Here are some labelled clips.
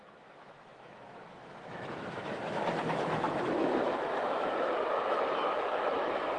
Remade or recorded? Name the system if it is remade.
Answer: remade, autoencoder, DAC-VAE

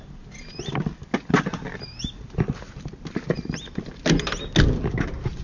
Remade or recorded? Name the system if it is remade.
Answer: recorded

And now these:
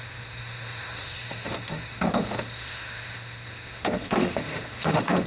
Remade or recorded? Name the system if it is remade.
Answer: remade, autoencoder, DAC-VAE